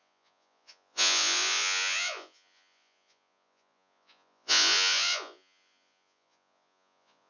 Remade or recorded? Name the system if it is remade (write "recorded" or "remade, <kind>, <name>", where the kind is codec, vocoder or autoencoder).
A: remade, vocoder, Vocos